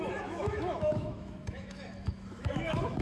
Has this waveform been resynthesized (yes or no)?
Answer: yes